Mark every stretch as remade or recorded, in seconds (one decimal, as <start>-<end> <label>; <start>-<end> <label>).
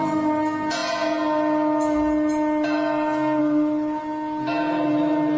0.0-5.4 recorded